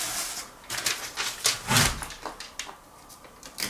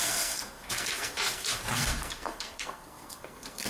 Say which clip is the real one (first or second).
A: first